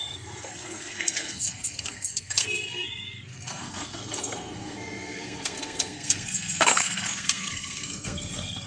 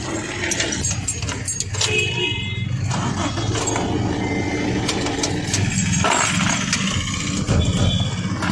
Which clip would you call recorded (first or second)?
second